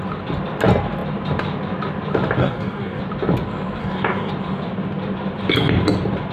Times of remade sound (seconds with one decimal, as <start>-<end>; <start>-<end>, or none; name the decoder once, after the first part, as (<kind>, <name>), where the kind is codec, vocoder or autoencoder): 2.4-3.0 (codec, DAC); 3.8-4.3